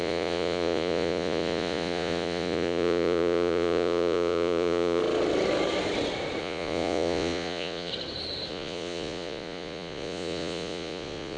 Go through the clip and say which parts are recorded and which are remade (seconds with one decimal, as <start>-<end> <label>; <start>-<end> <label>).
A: 0.0-5.0 remade; 5.0-6.4 recorded; 6.4-7.9 remade; 7.9-8.5 recorded; 8.5-11.4 remade